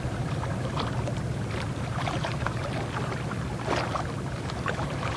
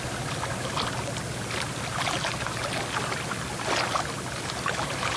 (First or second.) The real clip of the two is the second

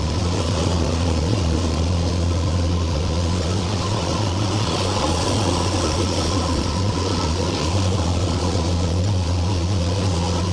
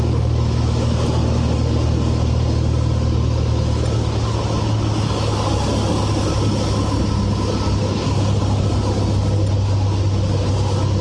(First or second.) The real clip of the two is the second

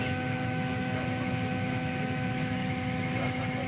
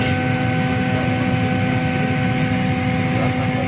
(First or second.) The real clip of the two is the second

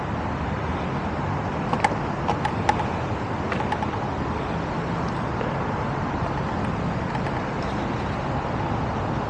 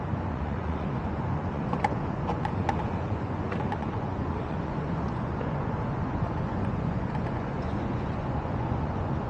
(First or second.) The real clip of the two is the first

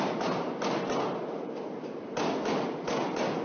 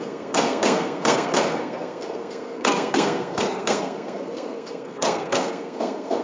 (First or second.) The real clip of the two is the first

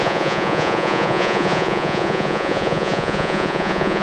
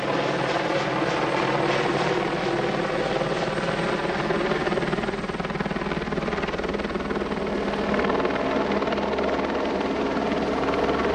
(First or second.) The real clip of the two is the second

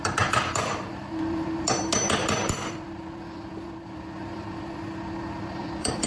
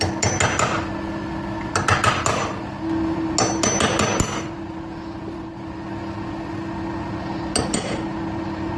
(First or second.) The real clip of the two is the second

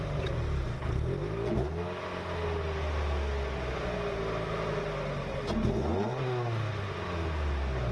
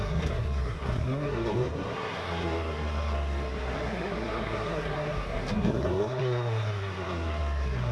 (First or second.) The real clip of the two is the first